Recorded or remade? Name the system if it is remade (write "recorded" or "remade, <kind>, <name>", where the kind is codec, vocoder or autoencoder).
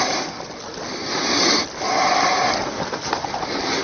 recorded